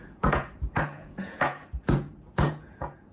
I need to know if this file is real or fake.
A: fake